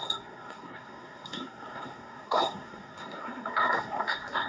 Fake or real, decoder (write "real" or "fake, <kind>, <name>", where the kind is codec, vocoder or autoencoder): fake, codec, SNAC